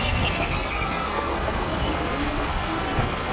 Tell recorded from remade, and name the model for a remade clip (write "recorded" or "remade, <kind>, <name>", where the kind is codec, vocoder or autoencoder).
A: remade, codec, SNAC